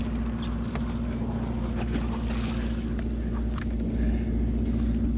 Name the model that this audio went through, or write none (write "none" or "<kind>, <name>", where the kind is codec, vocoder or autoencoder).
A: none